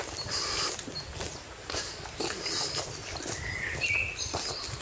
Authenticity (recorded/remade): recorded